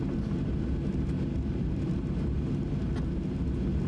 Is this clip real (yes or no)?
yes